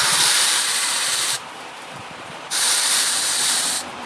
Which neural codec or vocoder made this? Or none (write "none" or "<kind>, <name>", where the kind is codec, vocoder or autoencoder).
vocoder, BigVGAN v2